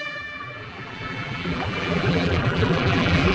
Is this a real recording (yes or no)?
no